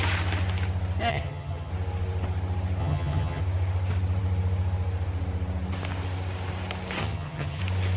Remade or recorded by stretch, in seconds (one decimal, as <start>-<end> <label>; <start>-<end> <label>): 0.0-1.1 recorded; 1.1-1.7 remade; 1.7-2.8 recorded; 2.8-3.4 remade; 3.4-7.0 recorded; 7.0-7.6 remade; 7.6-8.0 recorded